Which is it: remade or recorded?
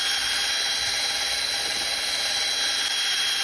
recorded